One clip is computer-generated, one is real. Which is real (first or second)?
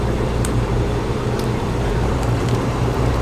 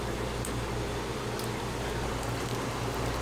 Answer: second